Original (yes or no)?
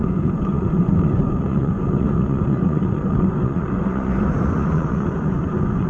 no